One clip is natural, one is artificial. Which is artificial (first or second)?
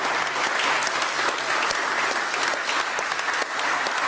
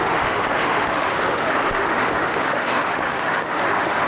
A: second